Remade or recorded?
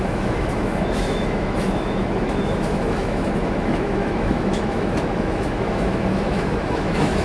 remade